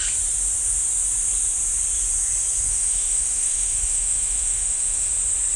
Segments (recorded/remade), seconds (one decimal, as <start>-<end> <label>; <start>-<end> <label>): 0.0-2.7 recorded; 2.7-5.1 remade; 5.1-5.6 recorded